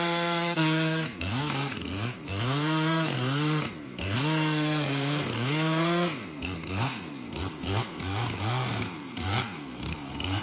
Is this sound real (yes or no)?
no